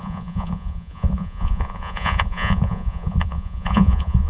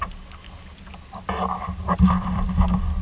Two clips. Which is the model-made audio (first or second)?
first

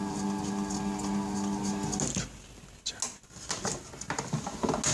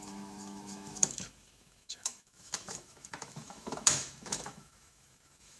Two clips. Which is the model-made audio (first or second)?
second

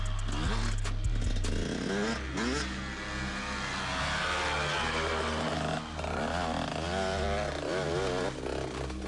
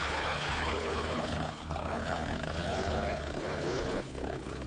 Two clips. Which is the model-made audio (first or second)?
second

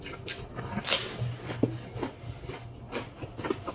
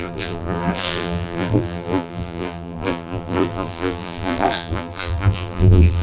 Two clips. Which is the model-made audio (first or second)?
second